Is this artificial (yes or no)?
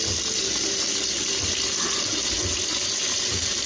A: no